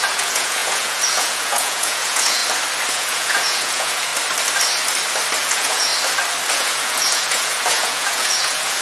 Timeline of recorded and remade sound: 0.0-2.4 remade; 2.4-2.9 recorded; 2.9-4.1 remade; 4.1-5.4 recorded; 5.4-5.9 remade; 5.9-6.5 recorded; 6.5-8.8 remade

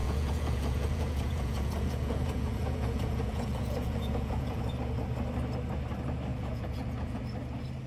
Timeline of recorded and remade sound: 0.0-4.7 remade; 4.7-6.3 recorded; 6.3-7.2 remade; 7.2-7.9 recorded